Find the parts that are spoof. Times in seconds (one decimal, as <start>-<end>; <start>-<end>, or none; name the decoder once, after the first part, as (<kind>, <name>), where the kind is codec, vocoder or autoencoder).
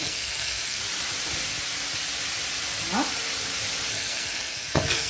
0.0-0.8 (codec, SNAC); 3.9-5.1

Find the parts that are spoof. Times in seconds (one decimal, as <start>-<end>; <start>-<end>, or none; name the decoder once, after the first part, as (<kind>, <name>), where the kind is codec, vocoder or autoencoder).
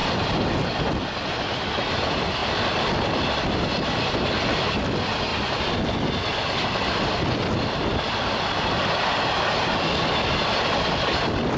0.0-0.5 (vocoder, BigVGAN v2); 2.4-3.3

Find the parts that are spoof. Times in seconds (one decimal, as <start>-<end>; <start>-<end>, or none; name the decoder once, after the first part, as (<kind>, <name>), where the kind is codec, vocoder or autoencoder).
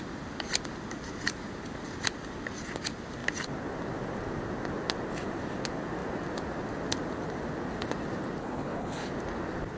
8.4-9.1 (codec, HILCodec)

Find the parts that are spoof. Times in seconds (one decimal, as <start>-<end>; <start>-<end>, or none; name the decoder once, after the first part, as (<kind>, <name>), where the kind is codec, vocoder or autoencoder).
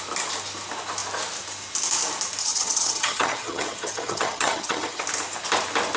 2.4-5.0 (vocoder, HiFi-GAN)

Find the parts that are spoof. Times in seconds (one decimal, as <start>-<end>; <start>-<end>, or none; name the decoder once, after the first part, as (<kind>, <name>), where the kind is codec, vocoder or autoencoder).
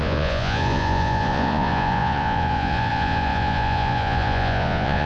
0.0-5.1 (vocoder, Vocos)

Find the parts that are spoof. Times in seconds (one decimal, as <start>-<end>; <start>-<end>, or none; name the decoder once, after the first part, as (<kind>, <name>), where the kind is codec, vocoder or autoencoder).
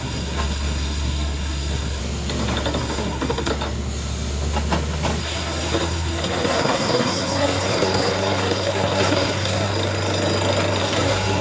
0.0-2.0 (codec, SNAC); 2.8-3.5; 5.2-9.7; 10.8-11.4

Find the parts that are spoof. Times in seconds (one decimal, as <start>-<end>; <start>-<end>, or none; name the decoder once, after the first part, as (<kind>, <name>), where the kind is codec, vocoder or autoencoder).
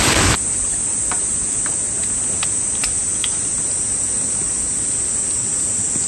none